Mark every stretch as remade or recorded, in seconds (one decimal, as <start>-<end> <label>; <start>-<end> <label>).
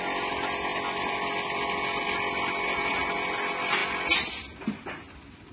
0.0-5.5 recorded